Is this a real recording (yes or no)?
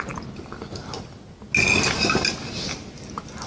yes